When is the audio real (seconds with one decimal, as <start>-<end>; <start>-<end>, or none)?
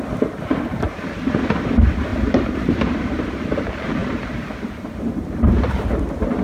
0.0-2.1; 2.8-4.0; 5.0-6.4